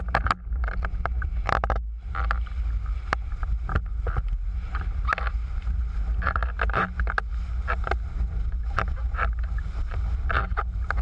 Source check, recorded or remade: recorded